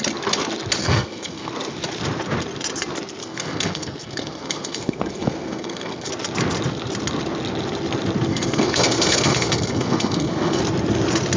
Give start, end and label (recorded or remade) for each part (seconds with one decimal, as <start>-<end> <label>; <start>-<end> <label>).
0.0-0.8 recorded; 0.8-1.5 remade; 1.5-3.2 recorded; 3.2-6.1 remade; 6.1-8.3 recorded; 8.3-10.6 remade; 10.6-11.4 recorded

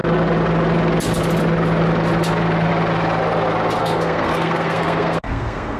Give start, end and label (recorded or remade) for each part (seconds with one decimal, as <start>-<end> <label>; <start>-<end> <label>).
0.0-3.8 recorded; 3.8-5.8 remade

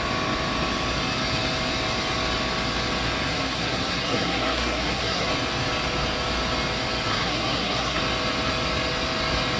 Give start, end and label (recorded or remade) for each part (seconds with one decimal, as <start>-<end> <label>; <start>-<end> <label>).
0.0-3.3 recorded; 3.3-5.3 remade; 5.3-7.1 recorded; 7.1-8.0 remade; 8.0-9.6 recorded

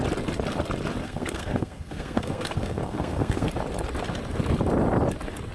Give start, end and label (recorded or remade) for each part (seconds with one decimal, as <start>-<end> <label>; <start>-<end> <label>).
0.0-1.0 recorded; 1.0-3.5 remade; 3.5-5.5 recorded

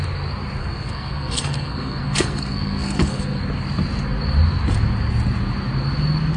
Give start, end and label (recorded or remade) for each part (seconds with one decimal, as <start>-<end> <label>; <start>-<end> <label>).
0.0-0.6 recorded; 0.6-3.4 remade; 3.4-6.4 recorded

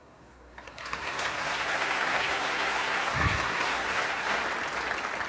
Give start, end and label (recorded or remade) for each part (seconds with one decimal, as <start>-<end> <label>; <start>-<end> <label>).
0.0-4.4 remade; 4.4-5.3 recorded